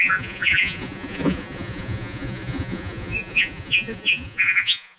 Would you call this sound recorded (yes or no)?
no